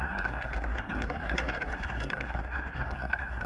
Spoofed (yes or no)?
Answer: yes